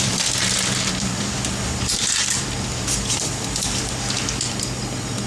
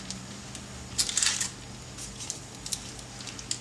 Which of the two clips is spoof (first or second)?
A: first